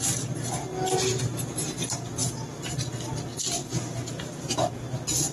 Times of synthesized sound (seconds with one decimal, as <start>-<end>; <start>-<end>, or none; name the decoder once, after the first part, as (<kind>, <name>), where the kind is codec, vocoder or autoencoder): 2.2-3.1 (vocoder, BigVGAN v2); 3.6-4.7